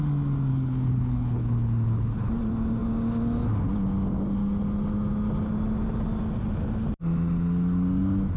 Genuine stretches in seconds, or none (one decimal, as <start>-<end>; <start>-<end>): 0.0-0.5; 2.3-8.4